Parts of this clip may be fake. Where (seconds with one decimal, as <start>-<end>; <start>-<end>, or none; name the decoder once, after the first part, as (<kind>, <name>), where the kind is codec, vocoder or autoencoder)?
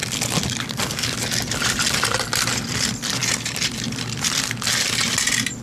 none